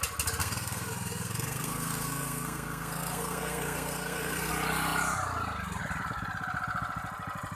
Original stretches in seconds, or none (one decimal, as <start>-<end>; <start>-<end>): 0.0-0.4; 4.5-7.6